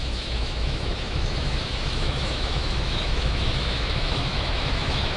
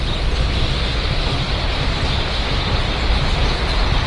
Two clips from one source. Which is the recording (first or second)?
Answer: second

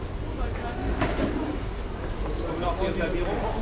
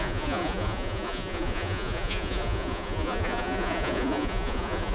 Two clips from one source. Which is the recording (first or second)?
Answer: first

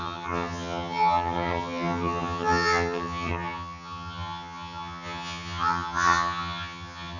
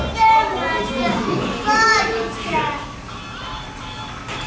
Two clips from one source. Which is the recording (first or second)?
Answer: second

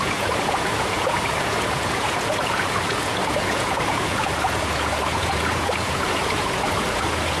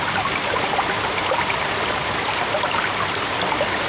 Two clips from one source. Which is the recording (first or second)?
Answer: second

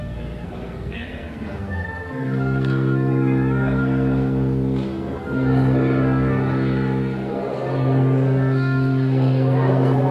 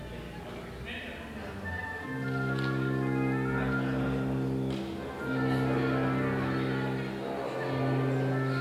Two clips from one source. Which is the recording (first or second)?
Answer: second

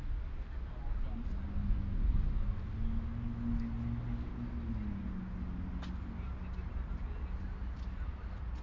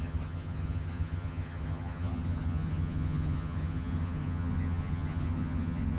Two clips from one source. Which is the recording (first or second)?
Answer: first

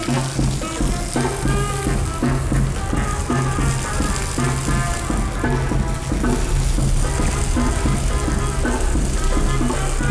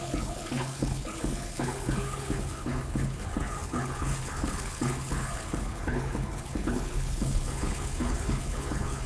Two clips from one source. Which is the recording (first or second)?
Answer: first